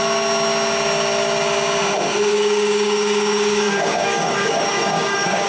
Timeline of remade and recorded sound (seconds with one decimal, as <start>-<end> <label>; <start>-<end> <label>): 0.0-2.3 recorded; 2.3-5.5 remade